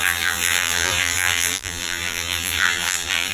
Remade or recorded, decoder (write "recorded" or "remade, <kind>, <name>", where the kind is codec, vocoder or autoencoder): remade, vocoder, BigVGAN v2